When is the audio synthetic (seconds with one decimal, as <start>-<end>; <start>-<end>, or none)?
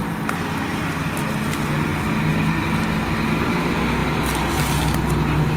0.0-1.9; 3.3-5.6